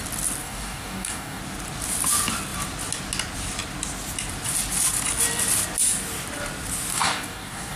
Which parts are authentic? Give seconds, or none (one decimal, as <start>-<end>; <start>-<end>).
0.0-0.4; 1.4-6.9